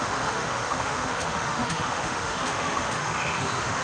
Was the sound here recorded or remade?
remade